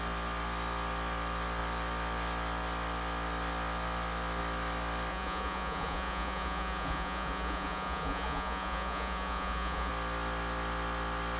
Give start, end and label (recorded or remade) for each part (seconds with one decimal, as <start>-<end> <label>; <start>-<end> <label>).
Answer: 0.0-5.1 recorded; 5.1-9.9 remade; 9.9-11.4 recorded